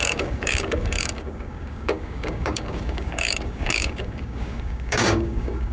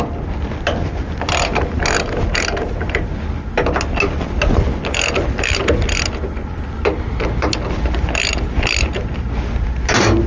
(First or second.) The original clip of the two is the second